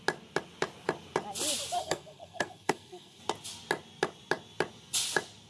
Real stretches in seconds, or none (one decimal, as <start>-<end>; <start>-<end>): 0.0-1.8; 3.2-5.5